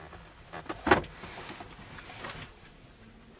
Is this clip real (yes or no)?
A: yes